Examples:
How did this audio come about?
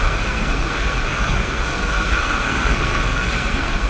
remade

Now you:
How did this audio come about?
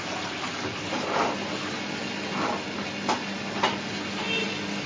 recorded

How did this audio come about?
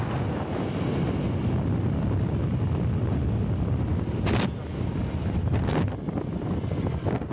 recorded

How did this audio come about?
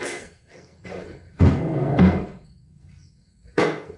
remade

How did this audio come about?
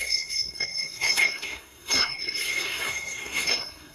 remade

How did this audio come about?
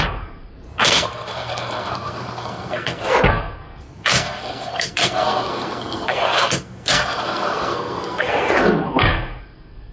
remade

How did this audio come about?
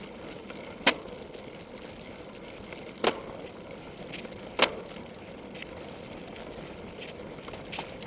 recorded